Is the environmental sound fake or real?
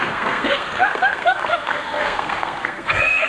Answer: fake